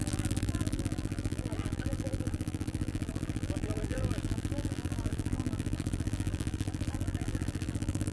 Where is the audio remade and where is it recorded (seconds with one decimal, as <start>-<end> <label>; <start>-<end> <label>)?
0.0-8.1 remade